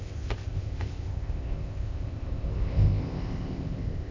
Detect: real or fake fake